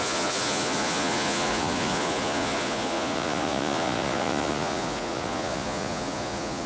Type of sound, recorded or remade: remade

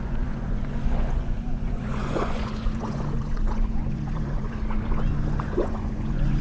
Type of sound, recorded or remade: remade